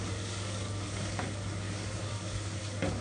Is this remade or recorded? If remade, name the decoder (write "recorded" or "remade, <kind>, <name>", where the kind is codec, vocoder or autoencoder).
remade, codec, DAC